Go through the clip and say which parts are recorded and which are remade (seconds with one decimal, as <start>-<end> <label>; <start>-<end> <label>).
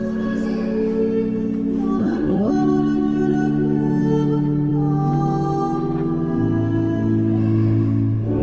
0.0-2.0 recorded; 2.0-2.5 remade; 2.5-8.4 recorded